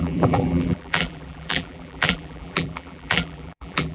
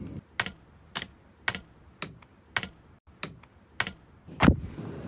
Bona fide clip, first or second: second